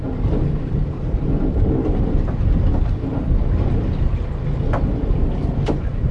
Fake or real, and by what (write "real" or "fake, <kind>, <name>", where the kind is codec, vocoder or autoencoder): real